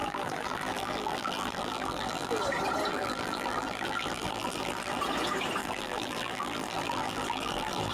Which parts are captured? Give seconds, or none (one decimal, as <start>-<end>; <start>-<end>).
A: 2.4-2.9; 5.0-5.6